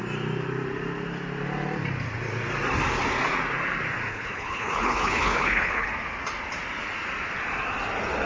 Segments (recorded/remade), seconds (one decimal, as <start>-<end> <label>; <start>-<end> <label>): 0.0-4.1 recorded; 4.1-5.9 remade; 5.9-8.3 recorded